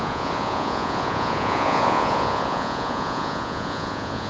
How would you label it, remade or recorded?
remade